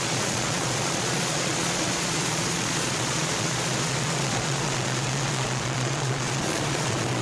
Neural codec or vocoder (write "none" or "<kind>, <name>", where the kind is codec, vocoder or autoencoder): vocoder, Vocos